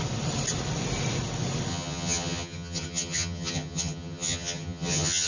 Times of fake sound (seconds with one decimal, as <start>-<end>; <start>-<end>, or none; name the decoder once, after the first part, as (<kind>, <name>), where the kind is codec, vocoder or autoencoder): 1.7-5.3 (vocoder, HiFi-GAN)